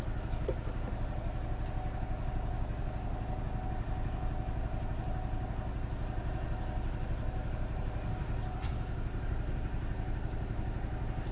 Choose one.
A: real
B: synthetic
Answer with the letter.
A